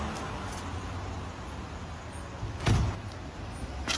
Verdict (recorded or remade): recorded